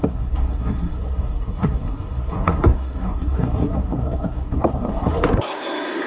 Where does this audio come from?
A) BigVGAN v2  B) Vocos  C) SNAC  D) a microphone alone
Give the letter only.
C